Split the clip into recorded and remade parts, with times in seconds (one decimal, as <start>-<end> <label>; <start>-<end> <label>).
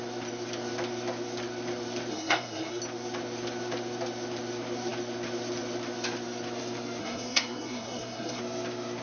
0.0-2.1 recorded; 2.1-2.8 remade; 2.8-7.0 recorded; 7.0-8.4 remade; 8.4-9.0 recorded